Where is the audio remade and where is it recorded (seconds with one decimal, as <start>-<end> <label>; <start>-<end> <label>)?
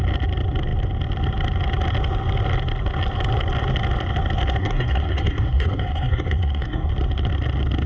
0.0-4.6 recorded; 4.6-6.9 remade; 6.9-7.9 recorded